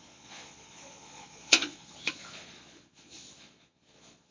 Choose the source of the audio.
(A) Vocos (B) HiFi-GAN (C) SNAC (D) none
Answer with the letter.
A